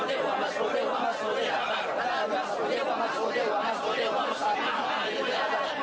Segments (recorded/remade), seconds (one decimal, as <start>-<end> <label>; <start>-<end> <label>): 0.0-5.8 recorded